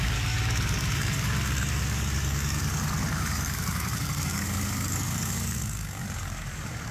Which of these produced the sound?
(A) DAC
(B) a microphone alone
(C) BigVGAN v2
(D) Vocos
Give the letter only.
A